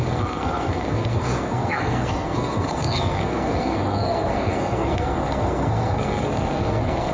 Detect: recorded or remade remade